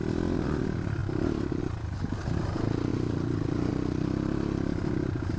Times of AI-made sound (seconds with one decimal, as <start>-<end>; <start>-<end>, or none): none